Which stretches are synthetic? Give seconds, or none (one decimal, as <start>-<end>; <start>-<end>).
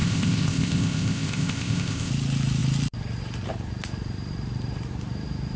0.0-2.1